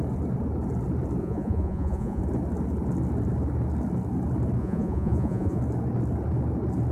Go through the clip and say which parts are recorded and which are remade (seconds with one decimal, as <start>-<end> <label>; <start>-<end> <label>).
0.0-1.2 recorded; 1.2-2.2 remade; 2.2-4.6 recorded; 4.6-5.6 remade; 5.6-6.9 recorded